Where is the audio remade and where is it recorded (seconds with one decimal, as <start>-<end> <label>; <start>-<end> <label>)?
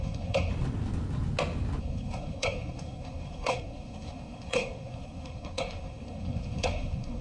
0.0-0.5 remade; 0.5-1.8 recorded; 1.8-7.2 remade